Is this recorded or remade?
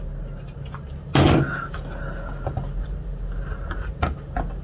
recorded